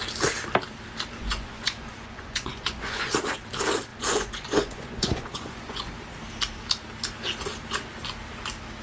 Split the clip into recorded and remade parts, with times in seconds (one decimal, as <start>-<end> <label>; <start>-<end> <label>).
0.0-1.2 recorded; 1.2-3.1 remade; 3.1-3.9 recorded; 3.9-5.9 remade; 5.9-8.8 recorded